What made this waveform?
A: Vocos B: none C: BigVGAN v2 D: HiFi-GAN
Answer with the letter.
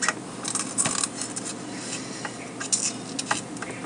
B